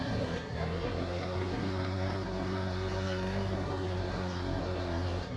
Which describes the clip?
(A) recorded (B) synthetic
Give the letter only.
B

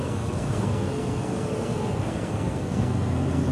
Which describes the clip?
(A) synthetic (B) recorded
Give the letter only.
A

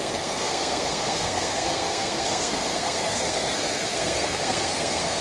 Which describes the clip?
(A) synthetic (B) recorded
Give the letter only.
A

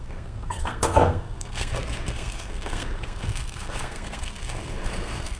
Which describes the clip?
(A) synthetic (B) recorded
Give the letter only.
A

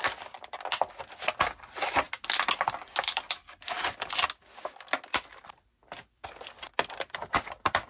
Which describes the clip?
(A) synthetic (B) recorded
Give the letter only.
B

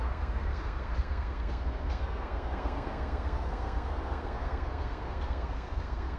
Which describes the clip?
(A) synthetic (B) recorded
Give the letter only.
A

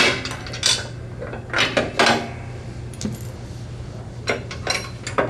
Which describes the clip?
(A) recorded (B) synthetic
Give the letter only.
A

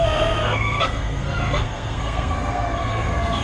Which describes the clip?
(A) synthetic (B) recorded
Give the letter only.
A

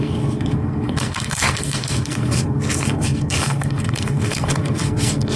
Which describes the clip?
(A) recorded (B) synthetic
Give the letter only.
B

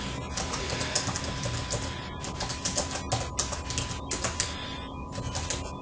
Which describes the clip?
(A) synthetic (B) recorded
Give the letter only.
B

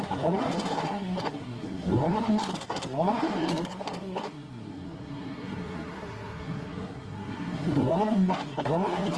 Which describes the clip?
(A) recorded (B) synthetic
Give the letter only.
B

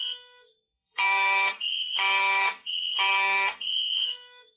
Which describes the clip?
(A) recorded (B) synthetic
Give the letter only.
B